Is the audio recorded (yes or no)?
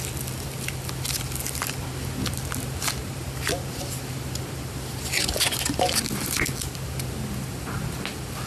yes